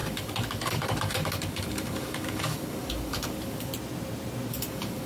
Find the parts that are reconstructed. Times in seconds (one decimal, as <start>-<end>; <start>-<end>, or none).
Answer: 0.0-3.7; 4.5-5.1